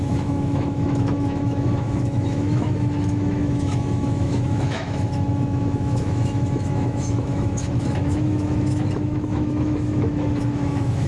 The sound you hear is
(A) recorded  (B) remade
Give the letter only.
B